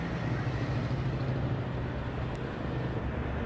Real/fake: real